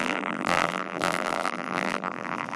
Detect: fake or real fake